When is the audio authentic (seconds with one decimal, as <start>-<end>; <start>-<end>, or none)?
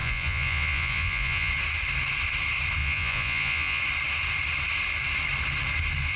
1.5-2.8; 3.8-6.2